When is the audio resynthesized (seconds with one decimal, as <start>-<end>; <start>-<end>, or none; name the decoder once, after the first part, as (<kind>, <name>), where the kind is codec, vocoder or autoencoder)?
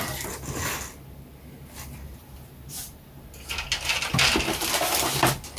none